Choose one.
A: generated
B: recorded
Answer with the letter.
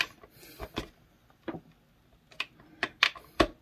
B